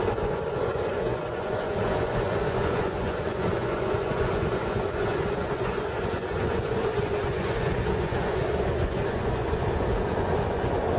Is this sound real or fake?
fake